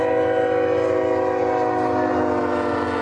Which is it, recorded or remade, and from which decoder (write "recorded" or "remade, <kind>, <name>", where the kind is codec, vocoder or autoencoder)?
recorded